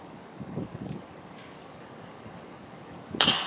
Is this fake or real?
fake